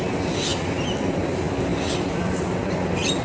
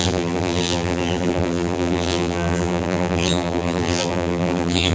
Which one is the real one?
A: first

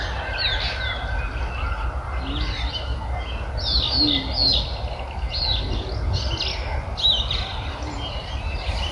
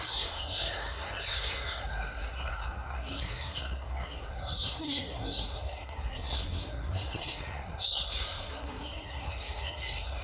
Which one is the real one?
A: first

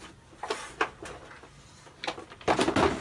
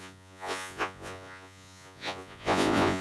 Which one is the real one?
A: first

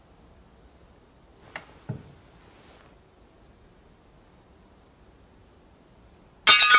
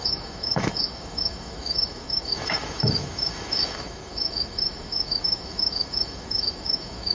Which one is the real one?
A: first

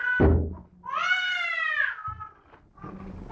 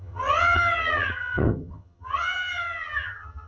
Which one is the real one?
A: first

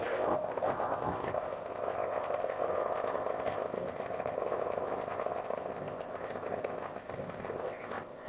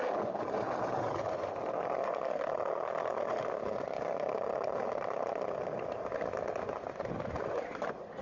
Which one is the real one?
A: second